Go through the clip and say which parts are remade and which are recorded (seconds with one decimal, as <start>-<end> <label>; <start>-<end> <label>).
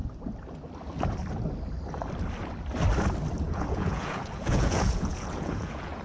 0.0-3.4 recorded; 3.4-6.0 remade